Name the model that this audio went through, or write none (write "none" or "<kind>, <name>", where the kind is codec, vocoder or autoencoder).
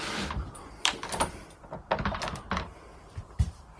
vocoder, BigVGAN v2